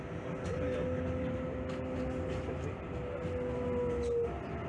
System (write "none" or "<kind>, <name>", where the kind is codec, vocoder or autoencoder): none